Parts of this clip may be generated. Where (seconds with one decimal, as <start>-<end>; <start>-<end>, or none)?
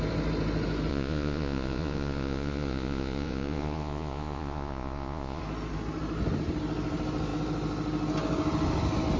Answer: 0.9-5.4